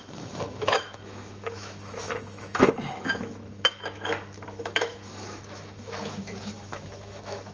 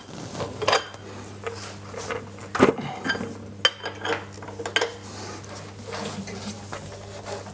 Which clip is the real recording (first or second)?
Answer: second